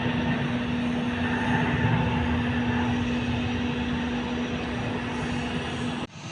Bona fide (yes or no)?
yes